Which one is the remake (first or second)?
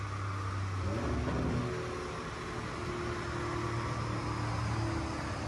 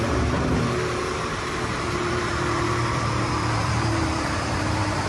second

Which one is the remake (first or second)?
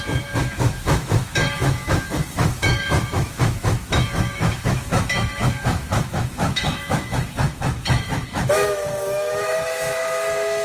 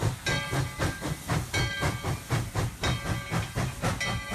first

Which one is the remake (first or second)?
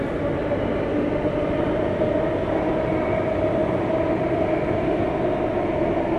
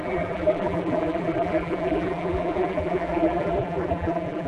second